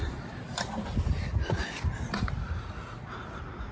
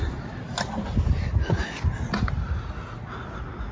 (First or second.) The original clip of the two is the second